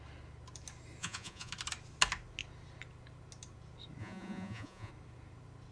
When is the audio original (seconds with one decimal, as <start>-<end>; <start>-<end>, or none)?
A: 0.0-1.0; 1.5-4.0; 4.9-5.7

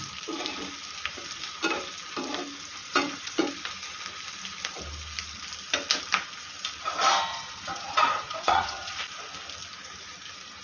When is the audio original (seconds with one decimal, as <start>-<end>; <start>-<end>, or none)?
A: 0.0-2.8; 3.5-7.3; 9.0-10.6

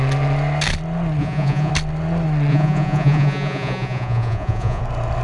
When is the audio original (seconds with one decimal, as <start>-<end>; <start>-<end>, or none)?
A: 0.0-1.2; 1.7-2.5; 4.8-5.2

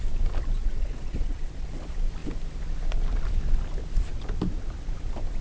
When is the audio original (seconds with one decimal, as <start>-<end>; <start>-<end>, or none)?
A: 0.0-0.6; 1.7-5.4

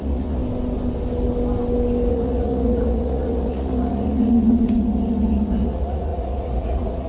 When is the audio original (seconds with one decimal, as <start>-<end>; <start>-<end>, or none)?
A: 0.4-2.1

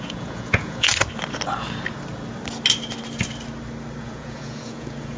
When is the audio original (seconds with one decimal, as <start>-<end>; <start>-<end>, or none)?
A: 0.9-4.0

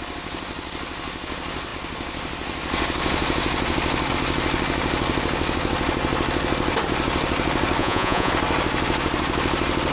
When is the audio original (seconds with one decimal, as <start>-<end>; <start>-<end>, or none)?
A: 0.0-7.8; 8.3-9.9